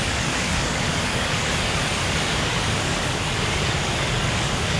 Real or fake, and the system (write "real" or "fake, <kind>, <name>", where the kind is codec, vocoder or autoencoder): fake, codec, DAC